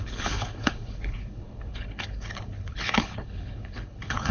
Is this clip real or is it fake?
fake